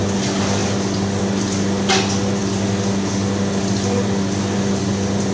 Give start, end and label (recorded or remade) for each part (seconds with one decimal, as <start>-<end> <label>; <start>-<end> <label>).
0.0-5.3 recorded